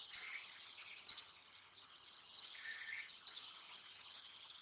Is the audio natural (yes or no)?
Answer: no